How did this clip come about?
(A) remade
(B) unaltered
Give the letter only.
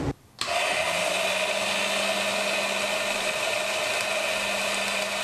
B